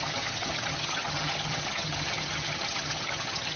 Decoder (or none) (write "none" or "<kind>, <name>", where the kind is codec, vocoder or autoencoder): vocoder, HiFi-GAN